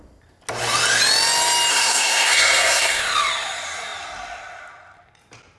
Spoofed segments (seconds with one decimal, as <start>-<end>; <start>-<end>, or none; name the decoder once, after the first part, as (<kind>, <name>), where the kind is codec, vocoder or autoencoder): 1.7-3.0 (codec, SNAC)

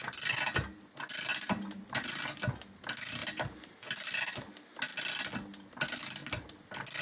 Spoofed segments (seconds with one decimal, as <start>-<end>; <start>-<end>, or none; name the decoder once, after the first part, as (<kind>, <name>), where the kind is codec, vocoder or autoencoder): 1.3-1.8 (vocoder, BigVGAN v2); 3.2-4.5

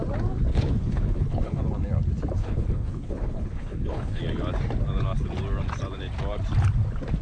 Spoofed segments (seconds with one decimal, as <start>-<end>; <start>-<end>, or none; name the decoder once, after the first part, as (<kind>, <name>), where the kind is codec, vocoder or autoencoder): 0.5-1.6 (codec, HILCodec); 2.4-4.2

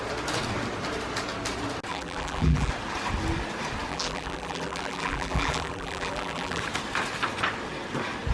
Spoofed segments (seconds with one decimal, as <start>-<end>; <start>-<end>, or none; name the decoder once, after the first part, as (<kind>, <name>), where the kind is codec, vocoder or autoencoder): 1.9-2.7 (vocoder, BigVGAN v2); 3.9-6.6